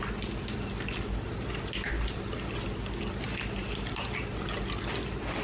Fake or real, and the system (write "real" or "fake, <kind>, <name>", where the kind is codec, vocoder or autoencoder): real